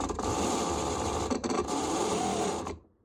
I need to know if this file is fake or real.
fake